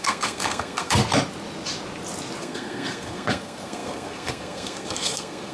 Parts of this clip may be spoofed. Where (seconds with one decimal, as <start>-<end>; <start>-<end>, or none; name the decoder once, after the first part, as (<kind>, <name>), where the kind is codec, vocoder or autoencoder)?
0.0-1.0 (codec, SNAC); 2.4-5.5